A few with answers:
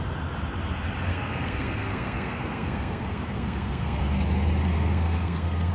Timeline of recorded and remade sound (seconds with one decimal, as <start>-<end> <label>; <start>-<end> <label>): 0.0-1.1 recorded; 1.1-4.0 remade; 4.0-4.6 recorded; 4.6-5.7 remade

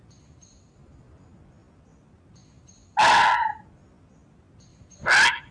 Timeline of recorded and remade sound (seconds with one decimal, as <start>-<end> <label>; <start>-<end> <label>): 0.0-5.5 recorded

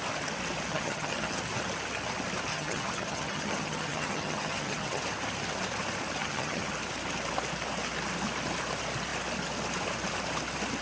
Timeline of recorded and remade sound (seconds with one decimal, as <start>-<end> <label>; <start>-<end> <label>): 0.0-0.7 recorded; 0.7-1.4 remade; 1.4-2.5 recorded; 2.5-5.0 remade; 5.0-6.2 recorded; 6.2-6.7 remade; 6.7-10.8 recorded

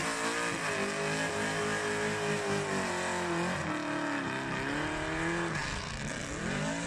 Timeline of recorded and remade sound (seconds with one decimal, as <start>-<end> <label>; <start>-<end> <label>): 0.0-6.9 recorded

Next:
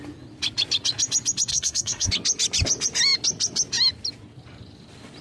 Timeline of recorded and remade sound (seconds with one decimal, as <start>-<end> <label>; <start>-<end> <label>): 0.0-1.5 recorded; 1.5-2.1 remade; 2.1-5.2 recorded

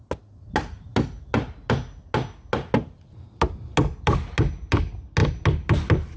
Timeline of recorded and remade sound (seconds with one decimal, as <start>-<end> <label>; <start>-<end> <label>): 0.0-6.2 recorded

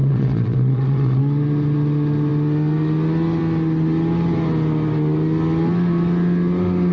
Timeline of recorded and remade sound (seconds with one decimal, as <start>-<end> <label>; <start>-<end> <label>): 0.0-1.2 remade; 1.2-6.9 recorded

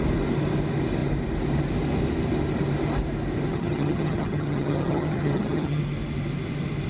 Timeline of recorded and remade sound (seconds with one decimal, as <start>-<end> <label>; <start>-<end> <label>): 0.0-3.5 recorded; 3.5-5.8 remade; 5.8-6.9 recorded